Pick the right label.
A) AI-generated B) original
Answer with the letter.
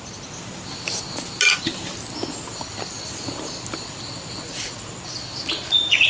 B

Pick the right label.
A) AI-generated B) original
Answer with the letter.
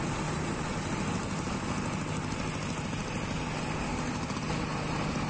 B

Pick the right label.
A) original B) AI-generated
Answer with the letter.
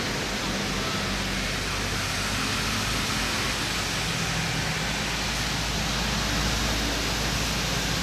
A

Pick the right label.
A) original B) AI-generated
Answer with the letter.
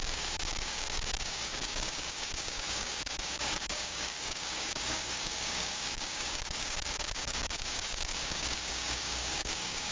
B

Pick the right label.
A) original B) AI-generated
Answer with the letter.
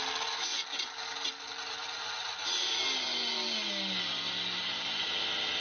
A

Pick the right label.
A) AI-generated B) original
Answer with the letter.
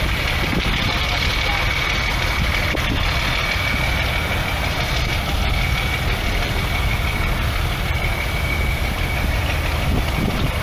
B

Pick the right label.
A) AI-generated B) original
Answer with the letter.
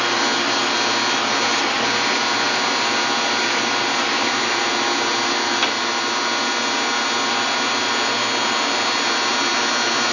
B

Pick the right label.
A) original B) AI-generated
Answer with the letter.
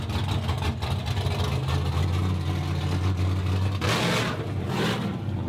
A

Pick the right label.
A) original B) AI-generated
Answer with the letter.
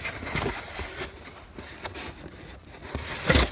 A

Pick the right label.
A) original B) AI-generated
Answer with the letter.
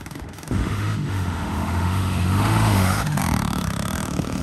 B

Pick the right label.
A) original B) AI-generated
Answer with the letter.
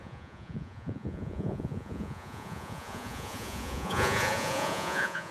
B